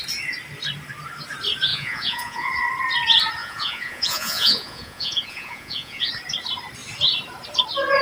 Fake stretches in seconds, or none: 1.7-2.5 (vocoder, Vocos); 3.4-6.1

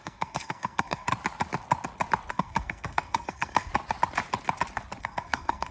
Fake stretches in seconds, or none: 0.0-1.1 (codec, SNAC); 2.3-3.7; 5.0-5.7

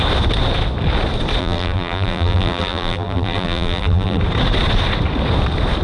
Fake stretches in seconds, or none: 1.4-4.2 (vocoder, BigVGAN v2)

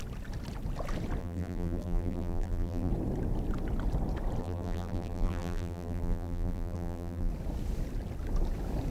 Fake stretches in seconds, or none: 1.2-2.9 (vocoder, BigVGAN v2); 4.4-7.3

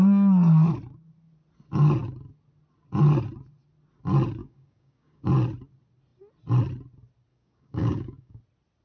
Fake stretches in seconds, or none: 4.4-5.3 (codec, DAC); 7.3-8.4

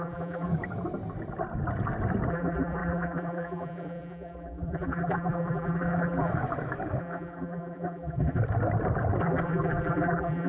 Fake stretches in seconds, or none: 0.0-0.5 (vocoder, BigVGAN v2); 2.3-6.3; 7.0-8.4; 9.2-10.5

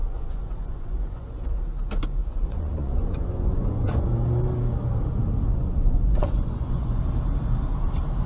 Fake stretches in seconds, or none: 0.0-1.6 (vocoder, Vocos); 2.2-4.2; 5.5-7.0

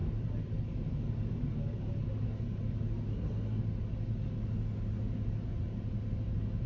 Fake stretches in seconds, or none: 3.1-3.6 (codec, SNAC)